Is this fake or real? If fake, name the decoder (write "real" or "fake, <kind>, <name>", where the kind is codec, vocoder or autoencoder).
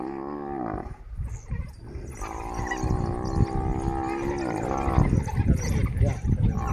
real